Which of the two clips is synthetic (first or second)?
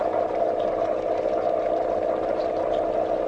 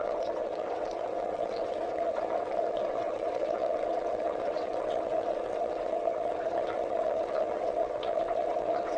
second